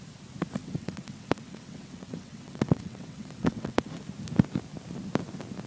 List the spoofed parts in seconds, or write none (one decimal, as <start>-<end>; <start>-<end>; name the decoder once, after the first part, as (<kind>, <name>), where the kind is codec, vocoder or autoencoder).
0.6-4.0 (vocoder, WaveNeXt)